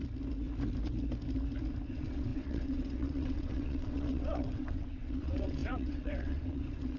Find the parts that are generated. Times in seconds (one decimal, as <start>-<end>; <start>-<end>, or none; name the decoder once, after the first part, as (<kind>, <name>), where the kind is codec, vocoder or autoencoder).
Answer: 1.9-7.0 (vocoder, WaveNeXt)

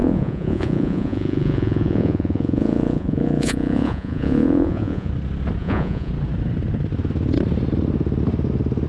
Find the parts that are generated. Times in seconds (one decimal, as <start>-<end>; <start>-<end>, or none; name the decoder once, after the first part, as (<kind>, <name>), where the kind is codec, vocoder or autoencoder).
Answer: 0.0-5.1 (vocoder, Vocos); 5.6-6.1

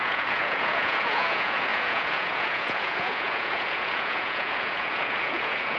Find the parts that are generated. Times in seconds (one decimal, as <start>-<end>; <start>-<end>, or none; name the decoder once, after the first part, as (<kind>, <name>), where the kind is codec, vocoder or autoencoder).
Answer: 0.0-5.8 (vocoder, Vocos)